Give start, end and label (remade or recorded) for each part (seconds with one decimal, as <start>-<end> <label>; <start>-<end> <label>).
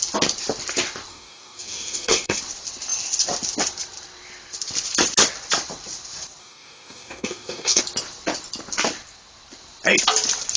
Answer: 0.0-1.1 recorded; 1.1-2.4 remade; 2.4-6.4 recorded; 6.4-7.8 remade; 7.8-10.6 recorded